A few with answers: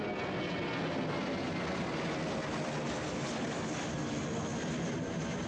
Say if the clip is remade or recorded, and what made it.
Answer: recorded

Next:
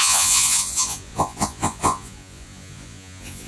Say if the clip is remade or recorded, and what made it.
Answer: remade, vocoder, Vocos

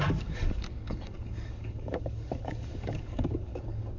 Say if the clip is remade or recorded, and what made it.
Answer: remade, codec, DAC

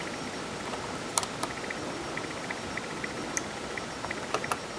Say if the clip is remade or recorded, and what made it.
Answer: recorded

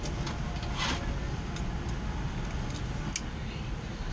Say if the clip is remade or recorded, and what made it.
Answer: recorded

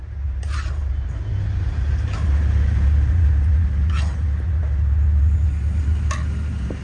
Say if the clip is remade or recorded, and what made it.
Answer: recorded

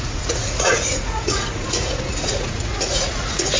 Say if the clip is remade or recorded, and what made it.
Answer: remade, vocoder, Vocos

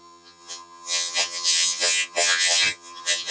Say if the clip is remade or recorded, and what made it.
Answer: remade, vocoder, HiFi-GAN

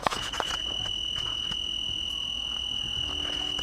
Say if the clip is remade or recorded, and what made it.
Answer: remade, vocoder, Vocos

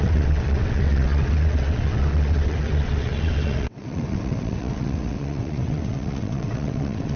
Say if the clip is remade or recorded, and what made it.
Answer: remade, vocoder, WaveNeXt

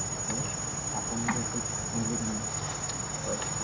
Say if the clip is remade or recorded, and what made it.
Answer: recorded